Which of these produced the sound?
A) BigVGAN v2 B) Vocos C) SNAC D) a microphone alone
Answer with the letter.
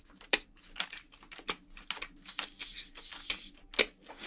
D